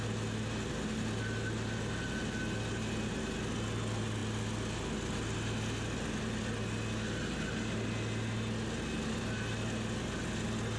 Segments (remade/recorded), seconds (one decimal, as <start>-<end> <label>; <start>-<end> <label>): 0.0-10.8 recorded